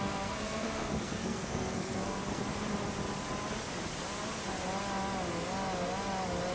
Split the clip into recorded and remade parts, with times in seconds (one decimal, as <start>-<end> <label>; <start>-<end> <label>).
0.0-2.4 remade; 2.4-6.5 recorded